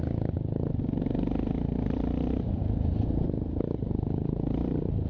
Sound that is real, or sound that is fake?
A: real